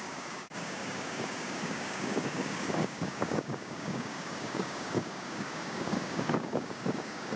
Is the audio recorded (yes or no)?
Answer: no